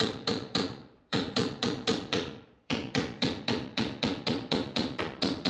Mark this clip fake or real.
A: fake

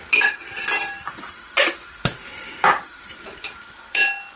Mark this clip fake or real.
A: real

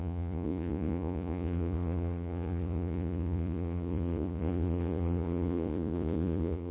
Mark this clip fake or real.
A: fake